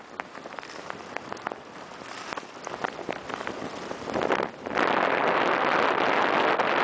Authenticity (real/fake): real